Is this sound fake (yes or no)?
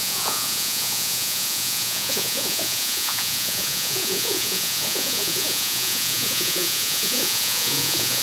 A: yes